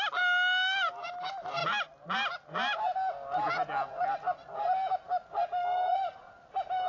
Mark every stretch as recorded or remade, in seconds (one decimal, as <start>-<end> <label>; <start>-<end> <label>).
0.0-6.9 recorded